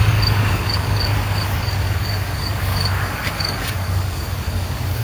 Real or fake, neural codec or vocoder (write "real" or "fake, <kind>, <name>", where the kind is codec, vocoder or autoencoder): fake, codec, DAC